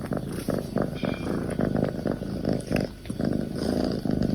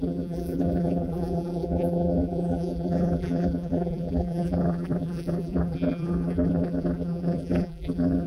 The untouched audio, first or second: first